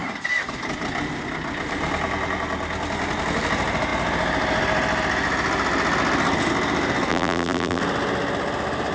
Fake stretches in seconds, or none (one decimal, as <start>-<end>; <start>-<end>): 7.1-7.8